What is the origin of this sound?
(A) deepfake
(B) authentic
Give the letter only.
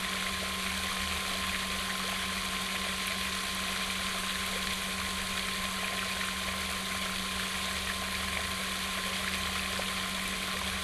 B